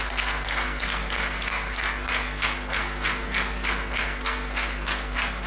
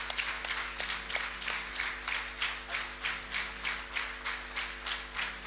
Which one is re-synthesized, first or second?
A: first